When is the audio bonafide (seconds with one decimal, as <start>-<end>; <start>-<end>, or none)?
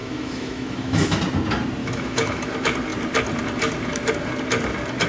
1.2-1.8; 2.4-5.1